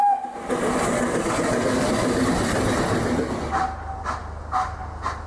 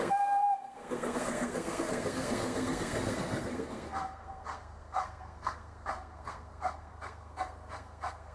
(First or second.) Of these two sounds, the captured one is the first